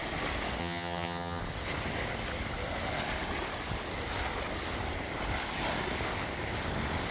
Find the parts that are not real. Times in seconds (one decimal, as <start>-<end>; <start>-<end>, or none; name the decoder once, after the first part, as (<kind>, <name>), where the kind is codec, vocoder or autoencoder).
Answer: 0.6-1.4 (vocoder, HiFi-GAN)